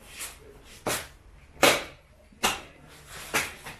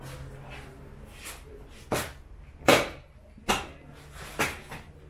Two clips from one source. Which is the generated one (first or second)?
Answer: first